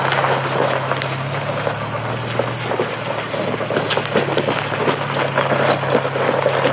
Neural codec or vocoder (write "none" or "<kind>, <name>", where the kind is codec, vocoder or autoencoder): none